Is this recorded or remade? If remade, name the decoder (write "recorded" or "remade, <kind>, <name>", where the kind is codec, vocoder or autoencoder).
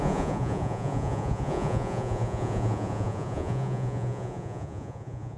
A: remade, vocoder, Vocos